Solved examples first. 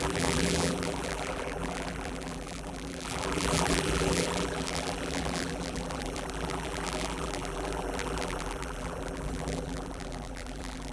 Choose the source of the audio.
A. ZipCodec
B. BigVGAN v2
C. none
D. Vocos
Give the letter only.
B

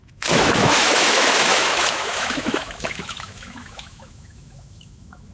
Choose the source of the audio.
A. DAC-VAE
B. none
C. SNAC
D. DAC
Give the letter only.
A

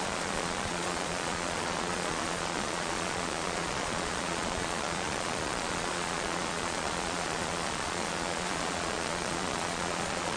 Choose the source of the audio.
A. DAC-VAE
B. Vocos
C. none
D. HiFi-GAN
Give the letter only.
B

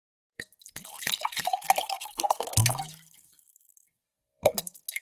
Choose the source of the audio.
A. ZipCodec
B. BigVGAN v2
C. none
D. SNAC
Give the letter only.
D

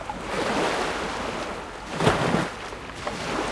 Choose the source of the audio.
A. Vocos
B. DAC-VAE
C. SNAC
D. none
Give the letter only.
D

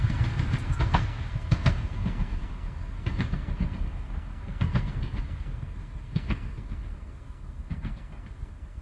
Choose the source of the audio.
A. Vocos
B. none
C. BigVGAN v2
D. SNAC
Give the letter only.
D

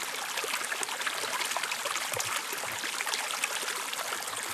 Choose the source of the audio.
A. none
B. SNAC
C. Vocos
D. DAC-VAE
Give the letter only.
A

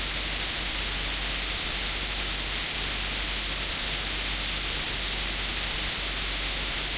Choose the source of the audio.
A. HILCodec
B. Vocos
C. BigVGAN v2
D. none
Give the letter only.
D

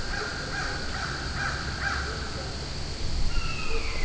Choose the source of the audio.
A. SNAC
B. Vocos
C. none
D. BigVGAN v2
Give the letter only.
C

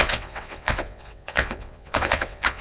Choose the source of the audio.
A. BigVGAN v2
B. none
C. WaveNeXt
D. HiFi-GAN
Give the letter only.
C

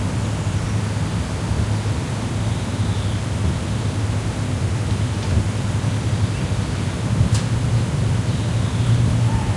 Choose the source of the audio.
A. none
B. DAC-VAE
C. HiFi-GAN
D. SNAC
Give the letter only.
A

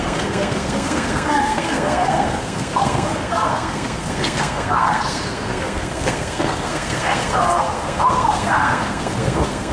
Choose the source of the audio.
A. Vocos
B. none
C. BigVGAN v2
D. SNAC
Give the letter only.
D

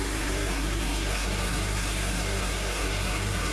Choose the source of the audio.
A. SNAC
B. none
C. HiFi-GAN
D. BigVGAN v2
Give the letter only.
A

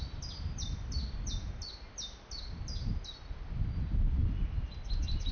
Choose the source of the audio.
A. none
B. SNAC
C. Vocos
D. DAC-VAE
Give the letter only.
A